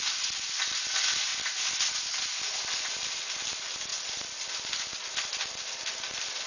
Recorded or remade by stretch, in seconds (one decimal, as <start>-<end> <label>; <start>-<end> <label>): 0.0-3.9 recorded; 3.9-5.4 remade; 5.4-6.5 recorded